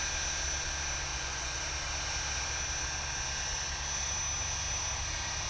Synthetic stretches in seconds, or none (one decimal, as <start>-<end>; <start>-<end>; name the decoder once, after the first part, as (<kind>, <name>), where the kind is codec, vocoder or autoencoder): 1.1-1.6 (vocoder, Vocos)